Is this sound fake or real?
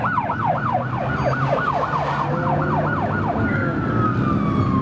real